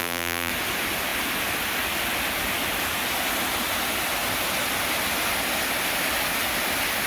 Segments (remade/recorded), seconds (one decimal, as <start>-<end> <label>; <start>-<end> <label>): 0.0-0.5 remade; 0.5-7.1 recorded